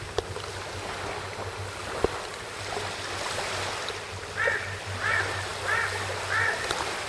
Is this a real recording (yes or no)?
yes